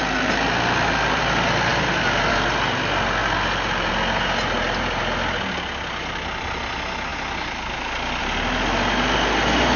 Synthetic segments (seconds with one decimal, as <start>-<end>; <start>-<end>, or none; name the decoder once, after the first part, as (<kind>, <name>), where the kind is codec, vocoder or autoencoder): none